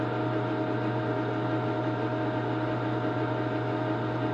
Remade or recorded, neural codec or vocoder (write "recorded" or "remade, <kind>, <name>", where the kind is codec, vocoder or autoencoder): recorded